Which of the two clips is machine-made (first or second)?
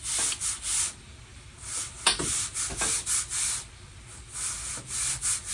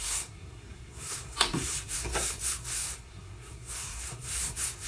second